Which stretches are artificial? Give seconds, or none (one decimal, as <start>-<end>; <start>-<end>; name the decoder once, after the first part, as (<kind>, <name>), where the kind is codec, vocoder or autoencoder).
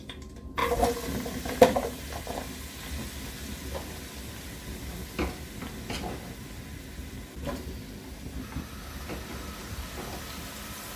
none